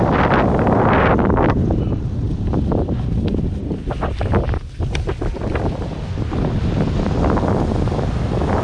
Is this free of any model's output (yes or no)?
yes